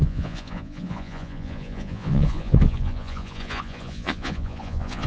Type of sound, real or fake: fake